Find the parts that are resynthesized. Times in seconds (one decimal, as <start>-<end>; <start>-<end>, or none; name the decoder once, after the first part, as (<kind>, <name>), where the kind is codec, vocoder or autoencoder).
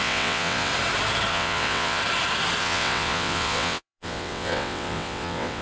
0.0-0.7 (vocoder, WaveNeXt); 1.3-2.0; 2.6-5.6